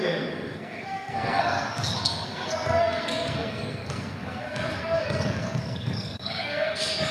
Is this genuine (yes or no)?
no